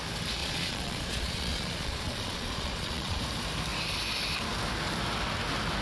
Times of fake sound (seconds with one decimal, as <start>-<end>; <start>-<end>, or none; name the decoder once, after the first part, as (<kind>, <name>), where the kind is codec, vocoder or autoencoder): 0.4-3.2 (vocoder, Vocos)